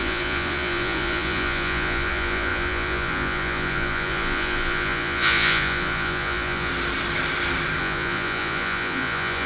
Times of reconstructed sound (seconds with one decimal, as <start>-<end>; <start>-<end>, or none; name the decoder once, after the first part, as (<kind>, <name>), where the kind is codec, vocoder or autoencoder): 0.0-6.7 (vocoder, Vocos); 7.8-9.5